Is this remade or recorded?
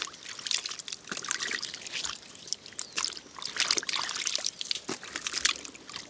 recorded